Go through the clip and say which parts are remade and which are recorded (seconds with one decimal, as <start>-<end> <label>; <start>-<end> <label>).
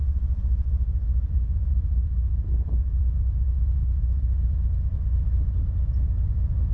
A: 0.0-1.3 recorded; 1.3-6.7 remade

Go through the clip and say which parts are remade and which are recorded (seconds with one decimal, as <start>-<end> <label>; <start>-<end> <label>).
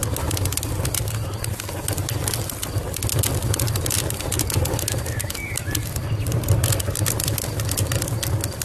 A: 0.0-8.6 recorded